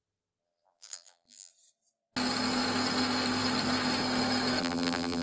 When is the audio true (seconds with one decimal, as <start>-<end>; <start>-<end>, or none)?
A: 1.5-4.6